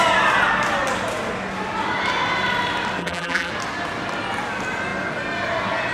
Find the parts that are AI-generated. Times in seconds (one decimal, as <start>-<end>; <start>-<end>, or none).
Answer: 3.0-3.5